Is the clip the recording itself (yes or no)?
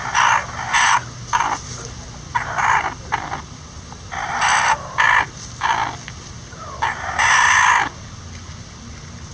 yes